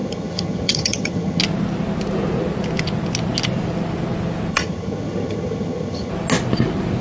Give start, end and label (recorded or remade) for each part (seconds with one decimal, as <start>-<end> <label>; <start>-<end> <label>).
0.0-1.4 remade; 1.4-4.5 recorded; 4.5-6.1 remade; 6.1-7.0 recorded